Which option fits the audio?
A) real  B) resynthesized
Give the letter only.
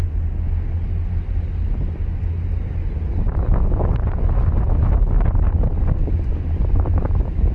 A